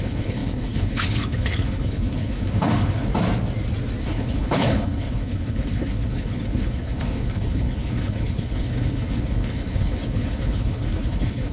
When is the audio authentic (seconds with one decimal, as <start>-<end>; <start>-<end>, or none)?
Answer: 3.1-4.0